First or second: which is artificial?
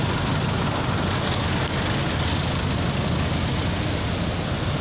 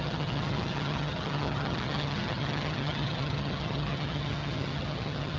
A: second